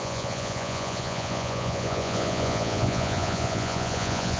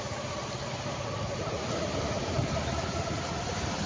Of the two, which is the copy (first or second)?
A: first